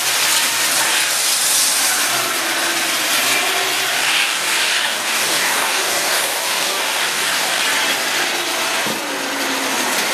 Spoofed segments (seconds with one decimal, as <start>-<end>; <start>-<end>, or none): 3.9-7.6